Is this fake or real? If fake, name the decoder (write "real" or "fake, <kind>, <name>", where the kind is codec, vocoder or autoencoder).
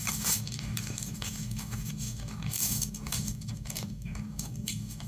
fake, codec, DAC